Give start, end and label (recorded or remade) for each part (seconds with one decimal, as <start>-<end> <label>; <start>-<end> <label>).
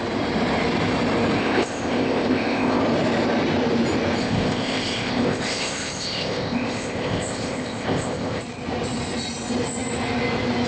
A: 0.0-1.4 recorded; 1.4-2.8 remade; 2.8-4.2 recorded; 4.2-8.4 remade; 8.4-10.7 recorded